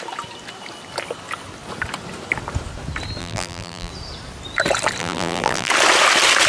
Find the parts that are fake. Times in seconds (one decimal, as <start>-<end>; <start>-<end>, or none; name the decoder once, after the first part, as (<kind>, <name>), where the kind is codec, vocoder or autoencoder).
3.2-3.9 (vocoder, BigVGAN v2); 5.0-5.7